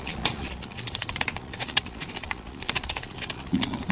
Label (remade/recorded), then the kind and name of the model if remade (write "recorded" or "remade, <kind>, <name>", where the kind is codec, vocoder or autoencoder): remade, vocoder, Vocos